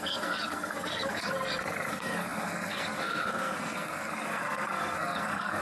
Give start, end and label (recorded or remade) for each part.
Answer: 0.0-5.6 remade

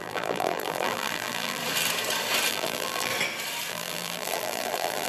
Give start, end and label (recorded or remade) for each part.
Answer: 0.0-1.6 remade; 1.6-2.5 recorded; 2.5-3.1 remade; 3.1-3.7 recorded; 3.7-5.1 remade

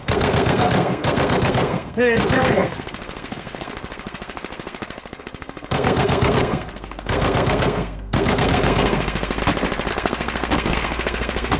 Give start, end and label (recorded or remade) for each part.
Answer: 0.0-9.4 remade; 9.4-9.9 recorded; 9.9-11.6 remade

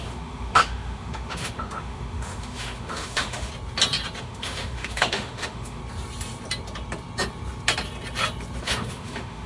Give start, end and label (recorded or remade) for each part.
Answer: 0.0-3.5 remade; 3.5-4.2 recorded; 4.2-5.8 remade; 5.8-8.6 recorded; 8.6-9.5 remade

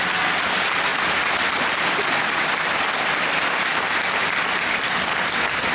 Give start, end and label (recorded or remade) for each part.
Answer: 0.0-5.7 recorded